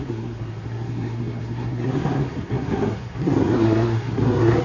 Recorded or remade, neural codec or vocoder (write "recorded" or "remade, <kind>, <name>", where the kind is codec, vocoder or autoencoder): remade, codec, SNAC